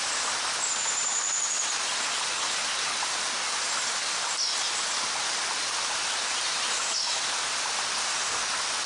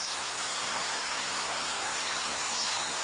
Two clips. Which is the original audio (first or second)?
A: first